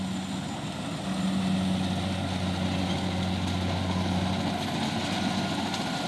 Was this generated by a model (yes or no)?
no